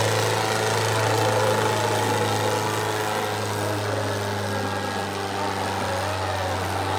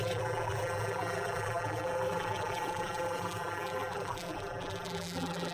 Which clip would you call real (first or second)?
first